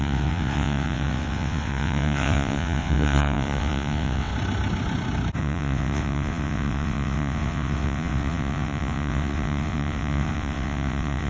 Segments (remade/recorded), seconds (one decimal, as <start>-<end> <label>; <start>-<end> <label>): 0.0-4.3 remade; 4.3-5.4 recorded; 5.4-11.3 remade